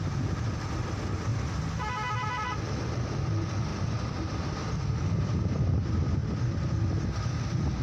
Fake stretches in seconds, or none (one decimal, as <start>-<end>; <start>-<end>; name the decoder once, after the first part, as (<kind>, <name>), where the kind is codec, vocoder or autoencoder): 0.0-1.3 (vocoder, BigVGAN v2); 2.1-6.2; 7.0-7.8